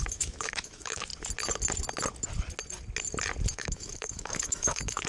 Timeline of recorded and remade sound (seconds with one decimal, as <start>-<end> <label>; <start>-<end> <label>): 0.0-1.1 remade; 1.1-3.5 recorded; 3.5-5.1 remade